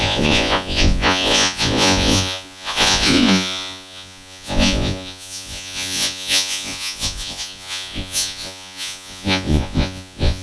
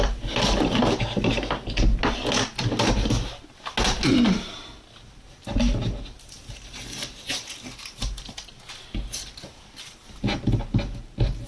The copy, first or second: first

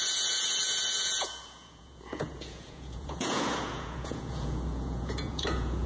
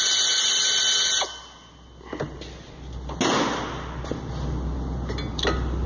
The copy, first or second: first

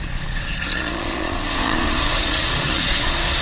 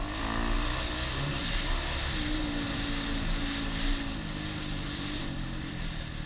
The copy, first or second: first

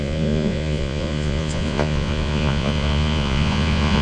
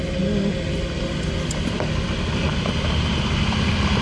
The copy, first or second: first